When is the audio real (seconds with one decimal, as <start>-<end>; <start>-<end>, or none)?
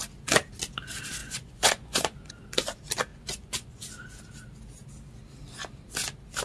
0.0-1.2; 2.3-3.1; 3.8-6.4